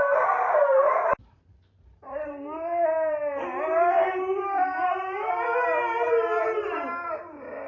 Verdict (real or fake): fake